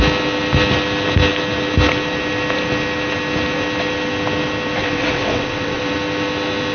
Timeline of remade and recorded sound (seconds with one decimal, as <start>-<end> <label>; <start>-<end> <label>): 0.0-4.8 recorded; 4.8-5.8 remade; 5.8-6.7 recorded